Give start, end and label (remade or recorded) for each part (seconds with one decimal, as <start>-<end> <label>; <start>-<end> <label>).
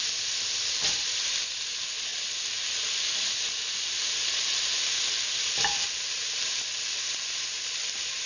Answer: 0.0-8.3 recorded